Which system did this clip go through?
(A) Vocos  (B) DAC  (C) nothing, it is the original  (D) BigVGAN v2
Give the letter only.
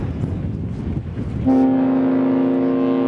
C